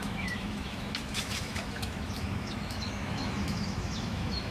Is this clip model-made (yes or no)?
yes